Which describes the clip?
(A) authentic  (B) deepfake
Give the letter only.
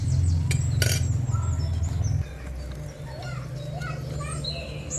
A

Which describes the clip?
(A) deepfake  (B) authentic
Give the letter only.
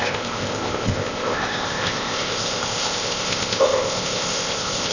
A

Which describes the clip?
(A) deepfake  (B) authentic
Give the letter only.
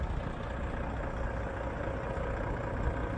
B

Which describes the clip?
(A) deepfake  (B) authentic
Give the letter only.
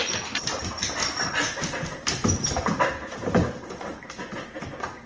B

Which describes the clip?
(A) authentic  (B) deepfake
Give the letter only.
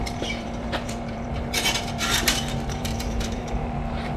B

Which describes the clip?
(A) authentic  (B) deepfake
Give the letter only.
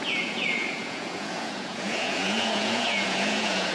B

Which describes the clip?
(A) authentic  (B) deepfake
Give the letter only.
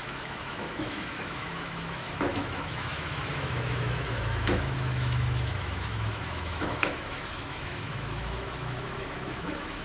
B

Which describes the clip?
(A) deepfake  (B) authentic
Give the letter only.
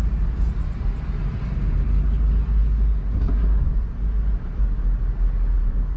B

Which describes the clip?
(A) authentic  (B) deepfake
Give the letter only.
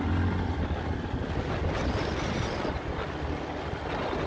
A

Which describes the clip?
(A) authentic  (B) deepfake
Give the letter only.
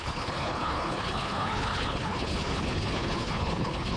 B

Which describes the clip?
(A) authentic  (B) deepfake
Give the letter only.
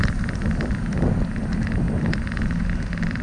A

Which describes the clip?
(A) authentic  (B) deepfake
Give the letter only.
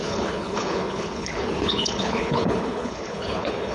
B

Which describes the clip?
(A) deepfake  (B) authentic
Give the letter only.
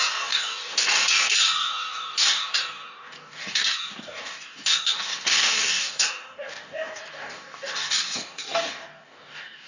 A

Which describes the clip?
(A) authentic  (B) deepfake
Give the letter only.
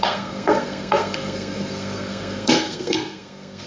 B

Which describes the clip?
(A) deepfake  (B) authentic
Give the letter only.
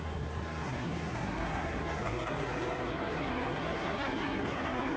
A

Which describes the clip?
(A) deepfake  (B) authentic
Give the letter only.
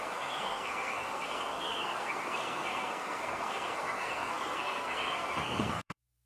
A